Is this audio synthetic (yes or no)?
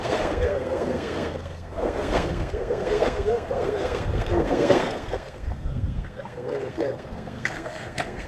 yes